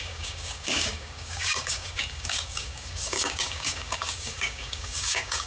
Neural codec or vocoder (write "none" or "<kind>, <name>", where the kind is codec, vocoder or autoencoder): codec, DAC